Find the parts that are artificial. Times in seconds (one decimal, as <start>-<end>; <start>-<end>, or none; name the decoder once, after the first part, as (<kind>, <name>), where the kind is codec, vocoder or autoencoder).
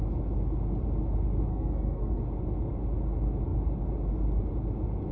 1.5-2.2 (codec, SNAC)